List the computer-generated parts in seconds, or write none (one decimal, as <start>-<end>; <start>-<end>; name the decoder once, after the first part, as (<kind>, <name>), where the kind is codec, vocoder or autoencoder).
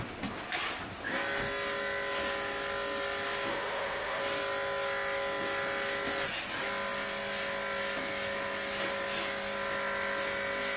3.5-4.2 (autoencoder, DAC-VAE)